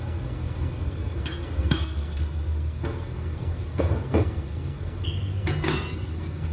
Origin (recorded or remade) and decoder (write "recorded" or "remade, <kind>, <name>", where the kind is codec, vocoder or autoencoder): remade, codec, SNAC